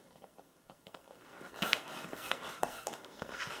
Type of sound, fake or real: fake